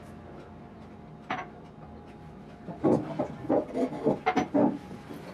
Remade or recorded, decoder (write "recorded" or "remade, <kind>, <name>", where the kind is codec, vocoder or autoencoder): recorded